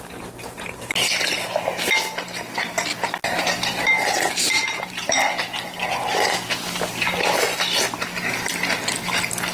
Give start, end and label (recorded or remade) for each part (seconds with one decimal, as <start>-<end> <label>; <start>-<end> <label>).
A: 0.0-3.2 recorded; 3.2-5.3 remade; 5.3-9.5 recorded